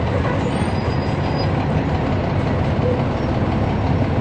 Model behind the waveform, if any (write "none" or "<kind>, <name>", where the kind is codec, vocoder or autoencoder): none